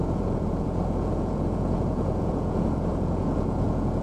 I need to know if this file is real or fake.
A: fake